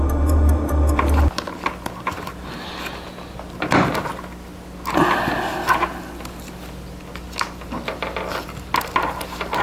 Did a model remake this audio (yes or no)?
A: no